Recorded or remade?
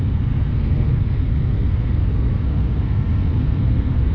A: remade